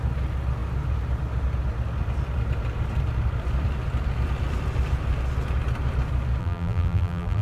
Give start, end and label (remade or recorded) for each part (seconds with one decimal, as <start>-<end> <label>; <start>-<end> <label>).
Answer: 0.0-6.4 recorded; 6.4-7.4 remade